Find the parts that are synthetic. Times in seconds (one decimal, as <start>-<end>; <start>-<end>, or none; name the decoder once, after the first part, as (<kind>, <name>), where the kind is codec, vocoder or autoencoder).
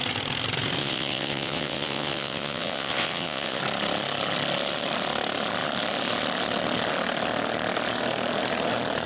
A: 0.8-3.6 (vocoder, WaveNeXt)